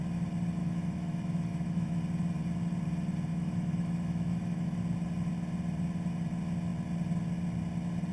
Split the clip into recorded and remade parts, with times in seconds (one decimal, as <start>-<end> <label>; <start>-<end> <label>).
0.0-0.6 recorded; 0.6-2.0 remade; 2.0-3.3 recorded; 3.3-4.8 remade; 4.8-8.1 recorded

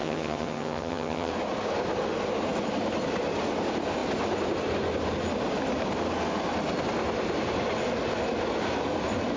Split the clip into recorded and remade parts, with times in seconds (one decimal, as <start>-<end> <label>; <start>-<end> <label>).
0.0-1.3 remade; 1.3-9.4 recorded

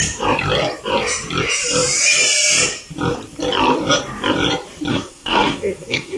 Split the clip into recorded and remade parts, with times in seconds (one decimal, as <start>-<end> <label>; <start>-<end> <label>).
0.0-4.9 recorded; 4.9-6.2 remade